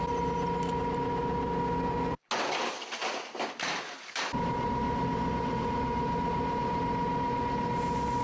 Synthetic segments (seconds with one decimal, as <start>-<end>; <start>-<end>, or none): none